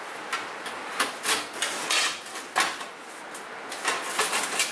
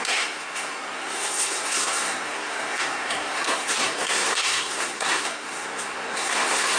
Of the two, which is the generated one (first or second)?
second